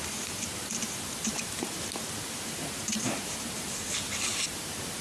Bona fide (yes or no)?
no